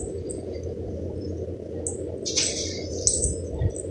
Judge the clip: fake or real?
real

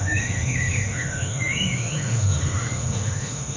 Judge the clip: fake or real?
fake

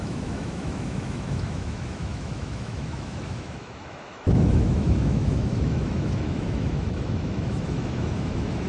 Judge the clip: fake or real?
fake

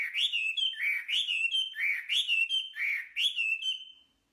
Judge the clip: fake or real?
real